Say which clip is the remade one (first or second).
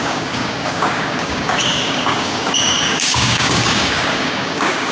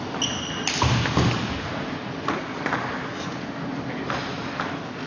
first